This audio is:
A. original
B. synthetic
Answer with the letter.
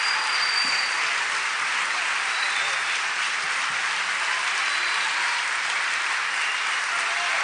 B